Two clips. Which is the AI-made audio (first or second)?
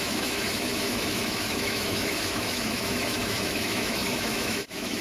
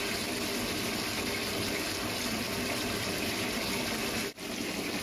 first